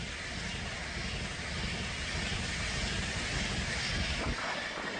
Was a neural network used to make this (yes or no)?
no